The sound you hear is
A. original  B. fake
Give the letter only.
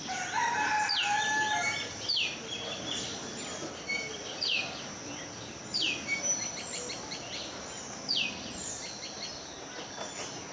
A